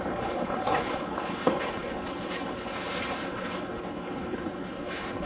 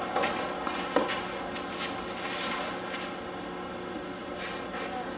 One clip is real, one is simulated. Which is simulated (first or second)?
first